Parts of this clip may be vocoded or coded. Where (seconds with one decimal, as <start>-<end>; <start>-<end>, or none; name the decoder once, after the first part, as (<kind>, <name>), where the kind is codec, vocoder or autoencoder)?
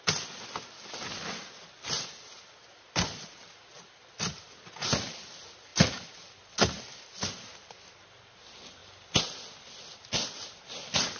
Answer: none